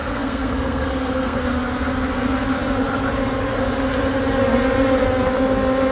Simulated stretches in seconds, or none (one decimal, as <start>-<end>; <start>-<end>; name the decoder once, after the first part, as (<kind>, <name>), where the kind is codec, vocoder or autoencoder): 0.0-1.4 (codec, SNAC)